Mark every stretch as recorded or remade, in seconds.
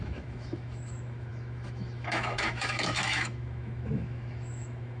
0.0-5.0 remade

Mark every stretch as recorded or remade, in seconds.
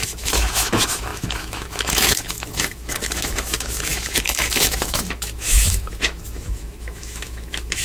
0.0-7.8 remade